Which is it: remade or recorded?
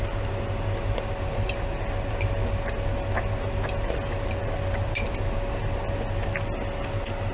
recorded